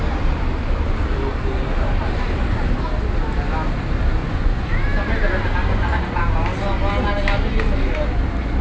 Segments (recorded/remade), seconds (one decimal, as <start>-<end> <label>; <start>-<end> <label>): 0.0-4.2 recorded; 4.2-4.7 remade; 4.7-5.6 recorded; 5.6-6.2 remade; 6.2-8.6 recorded